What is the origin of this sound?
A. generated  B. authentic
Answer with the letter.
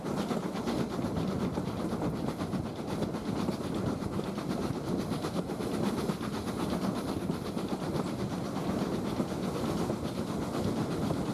B